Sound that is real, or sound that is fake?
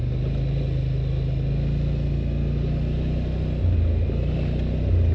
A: real